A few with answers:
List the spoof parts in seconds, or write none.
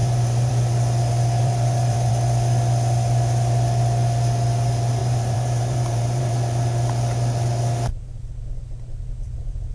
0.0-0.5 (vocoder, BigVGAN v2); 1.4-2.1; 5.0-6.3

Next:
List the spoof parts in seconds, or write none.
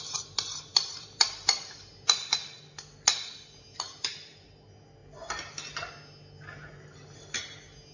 0.7-2.6 (vocoder, BigVGAN v2)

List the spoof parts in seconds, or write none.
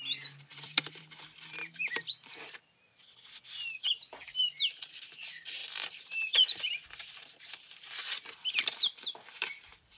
0.5-4.4 (vocoder, BigVGAN v2); 5.6-7.8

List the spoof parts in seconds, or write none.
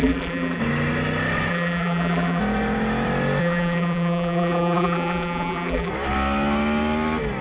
0.0-0.6 (vocoder, BigVGAN v2); 1.5-2.4; 3.4-5.9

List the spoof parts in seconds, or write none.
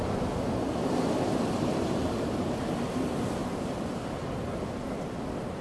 2.0-2.6 (vocoder, BigVGAN v2)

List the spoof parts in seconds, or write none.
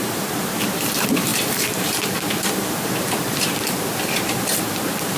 0.0-5.2 (vocoder, BigVGAN v2)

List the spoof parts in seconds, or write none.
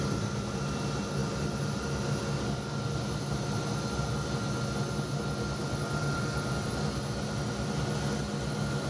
5.6-6.7 (vocoder, BigVGAN v2)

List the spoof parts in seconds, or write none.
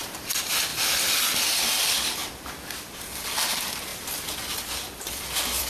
0.0-3.9 (vocoder, BigVGAN v2); 4.6-5.7